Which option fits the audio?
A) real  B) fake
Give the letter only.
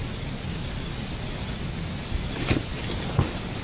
A